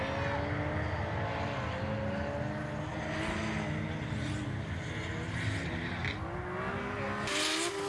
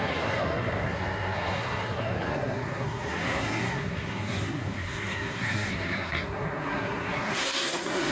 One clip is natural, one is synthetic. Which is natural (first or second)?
first